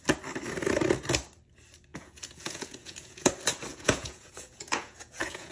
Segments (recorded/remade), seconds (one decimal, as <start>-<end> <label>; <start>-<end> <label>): 0.0-1.9 recorded; 1.9-3.3 remade; 3.3-3.7 recorded; 3.7-5.5 remade

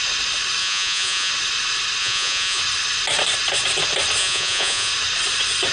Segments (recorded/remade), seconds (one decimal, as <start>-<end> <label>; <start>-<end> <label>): 0.0-0.6 recorded; 0.6-1.3 remade; 1.3-2.0 recorded; 2.0-2.6 remade; 2.6-4.2 recorded; 4.2-4.9 remade; 4.9-5.7 recorded

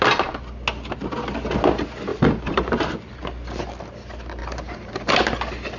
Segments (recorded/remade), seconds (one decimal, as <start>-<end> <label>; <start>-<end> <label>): 0.0-2.1 recorded; 2.1-3.2 remade; 3.2-4.4 recorded; 4.4-5.1 remade; 5.1-5.8 recorded

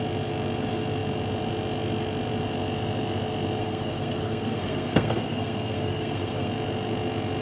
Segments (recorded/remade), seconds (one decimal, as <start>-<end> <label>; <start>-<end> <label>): 0.0-3.6 recorded; 3.6-6.5 remade; 6.5-7.4 recorded